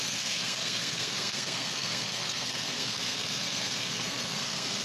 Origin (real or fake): fake